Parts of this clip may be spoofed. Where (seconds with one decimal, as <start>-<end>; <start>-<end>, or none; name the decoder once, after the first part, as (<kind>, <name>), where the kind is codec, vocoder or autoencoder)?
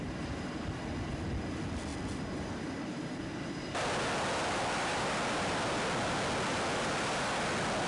none